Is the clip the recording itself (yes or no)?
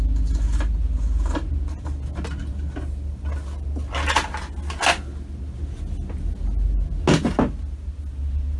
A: yes